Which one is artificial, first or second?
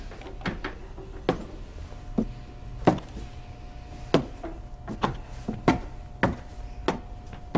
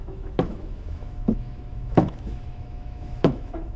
second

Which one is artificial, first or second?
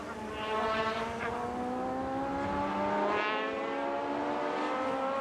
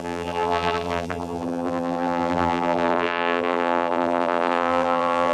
second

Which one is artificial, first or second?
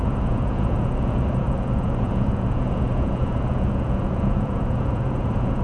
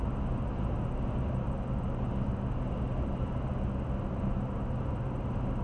first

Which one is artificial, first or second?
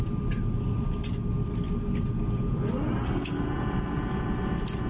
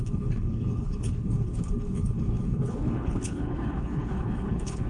second